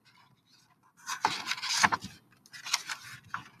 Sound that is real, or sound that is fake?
real